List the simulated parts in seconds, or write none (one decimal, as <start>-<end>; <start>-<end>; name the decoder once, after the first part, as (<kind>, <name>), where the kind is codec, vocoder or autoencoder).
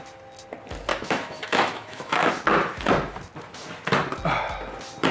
0.9-2.3 (autoencoder, DAC-VAE)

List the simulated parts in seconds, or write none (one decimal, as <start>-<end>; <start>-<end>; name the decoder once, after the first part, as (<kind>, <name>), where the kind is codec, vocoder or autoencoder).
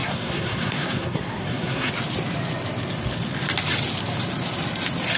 0.0-1.9 (codec, SNAC)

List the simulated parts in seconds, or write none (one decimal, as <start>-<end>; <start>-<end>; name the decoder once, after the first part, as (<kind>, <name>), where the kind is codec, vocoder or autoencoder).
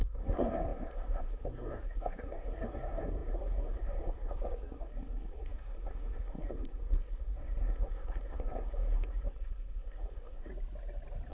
0.0-10.5 (codec, SNAC)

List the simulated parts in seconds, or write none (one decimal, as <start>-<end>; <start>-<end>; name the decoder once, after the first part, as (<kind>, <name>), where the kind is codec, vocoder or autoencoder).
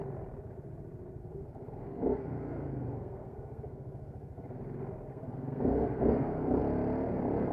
1.2-4.6 (codec, SNAC); 5.1-6.6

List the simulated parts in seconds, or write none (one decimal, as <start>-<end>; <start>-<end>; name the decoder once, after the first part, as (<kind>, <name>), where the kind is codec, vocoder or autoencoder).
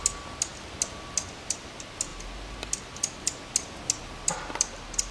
none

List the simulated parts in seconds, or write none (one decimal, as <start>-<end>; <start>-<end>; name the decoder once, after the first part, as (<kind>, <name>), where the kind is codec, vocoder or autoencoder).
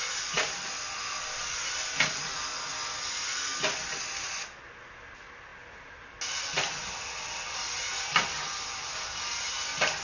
none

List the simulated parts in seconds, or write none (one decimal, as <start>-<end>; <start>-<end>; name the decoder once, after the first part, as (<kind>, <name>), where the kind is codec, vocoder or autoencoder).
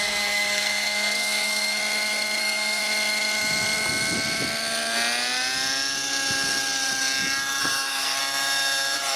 0.0-1.8 (codec, SNAC); 2.4-2.8; 7.6-8.2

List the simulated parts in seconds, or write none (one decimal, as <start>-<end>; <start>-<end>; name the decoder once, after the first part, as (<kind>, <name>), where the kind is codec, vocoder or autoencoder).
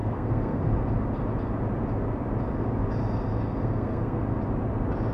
0.0-0.6 (codec, SNAC); 3.6-4.2